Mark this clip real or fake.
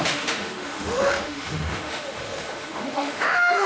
fake